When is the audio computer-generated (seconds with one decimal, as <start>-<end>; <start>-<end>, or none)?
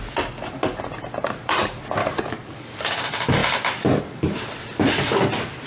2.0-2.9